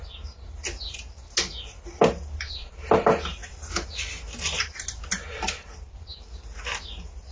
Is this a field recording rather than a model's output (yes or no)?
yes